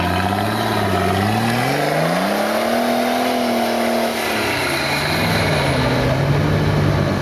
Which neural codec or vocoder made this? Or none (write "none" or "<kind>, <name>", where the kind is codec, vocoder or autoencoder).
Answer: none